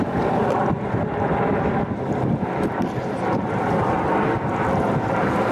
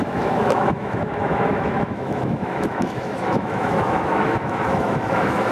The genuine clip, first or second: first